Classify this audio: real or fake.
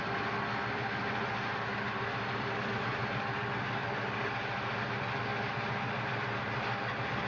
real